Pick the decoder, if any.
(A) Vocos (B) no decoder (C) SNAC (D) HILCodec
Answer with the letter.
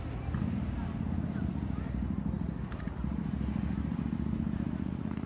B